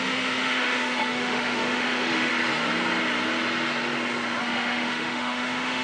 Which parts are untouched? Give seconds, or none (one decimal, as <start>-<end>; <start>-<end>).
2.3-4.4